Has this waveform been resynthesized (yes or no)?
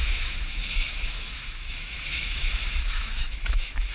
yes